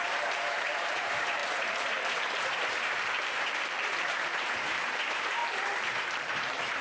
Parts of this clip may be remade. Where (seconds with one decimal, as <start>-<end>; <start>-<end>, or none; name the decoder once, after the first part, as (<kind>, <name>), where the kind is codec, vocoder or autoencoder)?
0.0-5.4 (vocoder, BigVGAN v2); 6.3-6.8